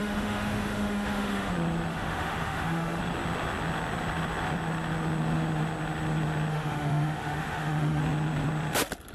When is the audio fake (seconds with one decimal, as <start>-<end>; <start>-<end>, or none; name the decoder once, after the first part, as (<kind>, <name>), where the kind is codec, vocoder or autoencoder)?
0.0-1.5 (autoencoder, DAC-VAE); 1.9-3.0; 6.5-8.0